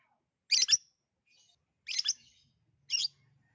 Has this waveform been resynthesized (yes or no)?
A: no